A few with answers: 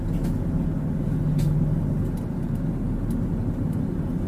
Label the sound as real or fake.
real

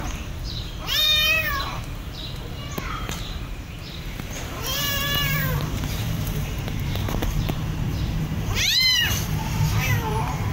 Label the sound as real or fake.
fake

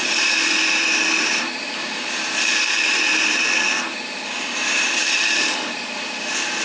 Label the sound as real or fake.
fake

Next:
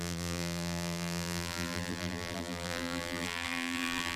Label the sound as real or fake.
fake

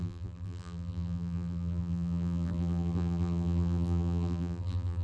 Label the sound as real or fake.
fake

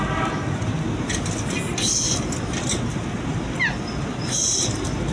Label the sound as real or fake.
real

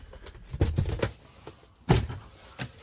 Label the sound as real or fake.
real